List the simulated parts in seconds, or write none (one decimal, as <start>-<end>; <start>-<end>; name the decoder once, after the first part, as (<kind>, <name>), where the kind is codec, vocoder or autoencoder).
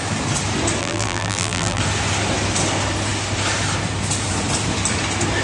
0.8-1.8 (vocoder, BigVGAN v2)